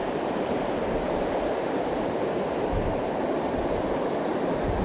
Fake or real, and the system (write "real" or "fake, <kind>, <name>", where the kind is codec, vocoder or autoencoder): fake, vocoder, BigVGAN v2